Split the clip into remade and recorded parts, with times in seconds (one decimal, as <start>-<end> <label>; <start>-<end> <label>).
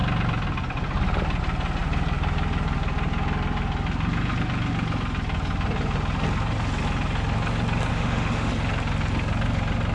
0.0-7.9 recorded; 7.9-8.5 remade; 8.5-9.9 recorded